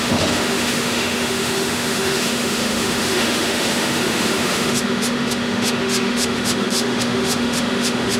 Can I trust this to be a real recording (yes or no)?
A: no